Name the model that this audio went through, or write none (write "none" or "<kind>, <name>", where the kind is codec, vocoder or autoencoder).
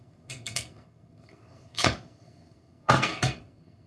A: codec, SNAC